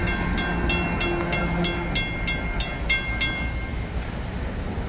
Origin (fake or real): real